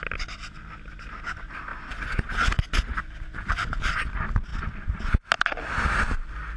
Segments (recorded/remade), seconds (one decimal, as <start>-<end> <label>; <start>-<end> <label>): 0.0-6.6 recorded